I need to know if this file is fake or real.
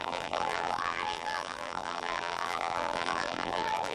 fake